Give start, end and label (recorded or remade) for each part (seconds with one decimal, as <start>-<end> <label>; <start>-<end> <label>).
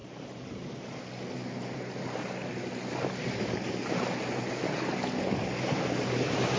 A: 0.0-6.6 recorded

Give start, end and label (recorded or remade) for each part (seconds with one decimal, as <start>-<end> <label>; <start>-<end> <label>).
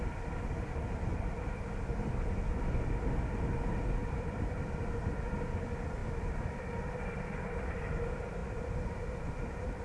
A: 0.0-4.0 recorded; 4.0-4.8 remade; 4.8-6.0 recorded; 6.0-6.6 remade; 6.6-8.4 recorded; 8.4-9.0 remade; 9.0-9.8 recorded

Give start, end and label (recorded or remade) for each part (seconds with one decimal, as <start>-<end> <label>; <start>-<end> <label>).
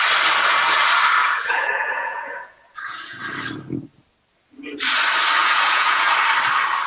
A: 0.0-1.2 recorded; 1.2-3.2 remade; 3.2-5.4 recorded; 5.4-6.1 remade; 6.1-6.9 recorded